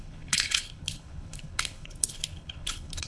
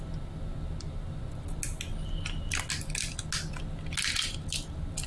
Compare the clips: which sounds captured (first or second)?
second